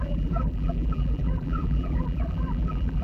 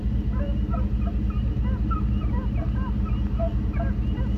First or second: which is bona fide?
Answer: second